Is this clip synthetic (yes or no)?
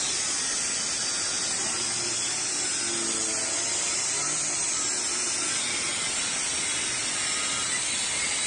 yes